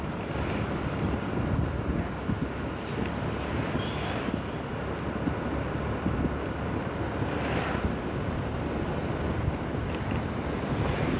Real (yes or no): yes